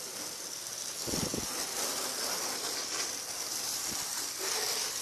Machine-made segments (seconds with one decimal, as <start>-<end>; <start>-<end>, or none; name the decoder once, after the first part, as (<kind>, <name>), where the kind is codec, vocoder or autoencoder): 1.3-4.3 (vocoder, BigVGAN v2)